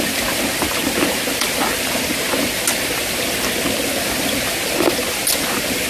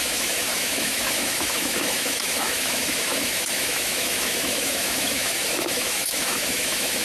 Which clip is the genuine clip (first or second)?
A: first